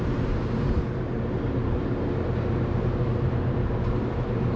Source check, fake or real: fake